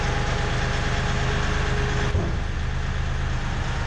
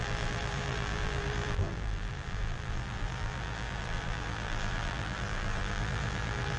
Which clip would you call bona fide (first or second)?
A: first